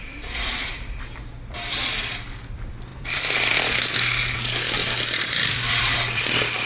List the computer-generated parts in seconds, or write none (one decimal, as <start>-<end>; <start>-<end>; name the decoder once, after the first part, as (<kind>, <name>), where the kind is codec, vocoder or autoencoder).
2.9-3.8 (vocoder, BigVGAN v2); 4.8-6.2